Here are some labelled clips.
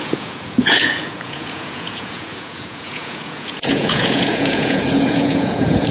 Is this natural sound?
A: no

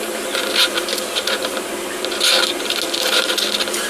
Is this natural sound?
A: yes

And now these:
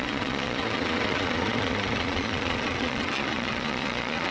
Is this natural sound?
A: no